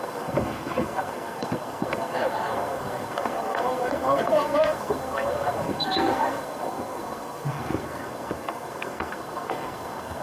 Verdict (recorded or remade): remade